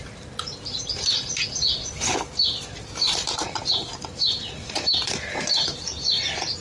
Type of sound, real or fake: fake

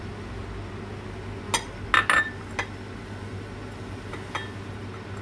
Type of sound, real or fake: real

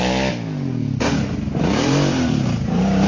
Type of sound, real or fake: real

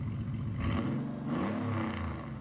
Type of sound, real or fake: real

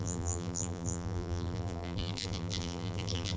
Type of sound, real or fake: fake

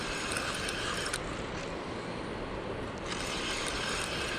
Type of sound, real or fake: real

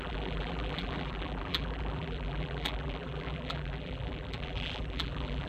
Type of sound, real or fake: fake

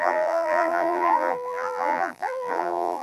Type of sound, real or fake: fake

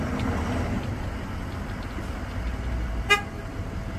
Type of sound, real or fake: real